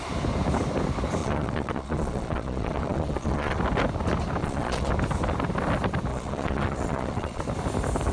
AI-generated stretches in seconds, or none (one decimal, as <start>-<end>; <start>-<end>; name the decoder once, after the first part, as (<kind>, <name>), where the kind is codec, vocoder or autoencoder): 1.2-3.6 (vocoder, Vocos); 4.4-4.9; 6.1-7.4